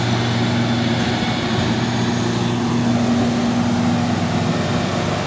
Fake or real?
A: real